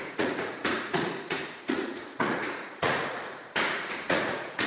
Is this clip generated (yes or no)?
yes